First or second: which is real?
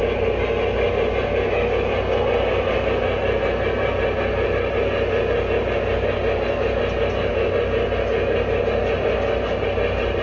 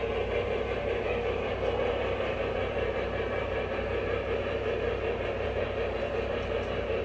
first